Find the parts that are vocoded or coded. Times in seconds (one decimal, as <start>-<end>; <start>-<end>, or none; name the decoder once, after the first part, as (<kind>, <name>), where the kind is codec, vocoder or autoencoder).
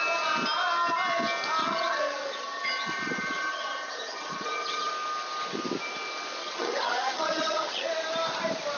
1.6-4.9 (vocoder, HiFi-GAN); 6.4-7.9